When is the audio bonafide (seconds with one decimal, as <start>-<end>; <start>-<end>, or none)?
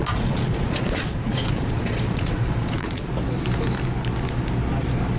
3.1-5.2